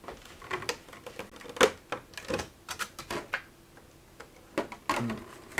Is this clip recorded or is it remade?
recorded